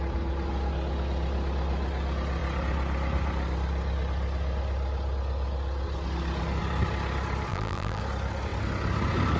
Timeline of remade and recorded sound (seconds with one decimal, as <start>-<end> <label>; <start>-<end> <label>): 0.0-7.5 recorded; 7.5-8.0 remade; 8.0-9.4 recorded